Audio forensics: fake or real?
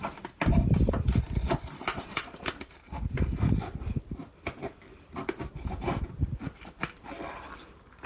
real